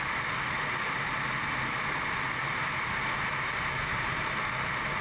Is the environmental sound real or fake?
real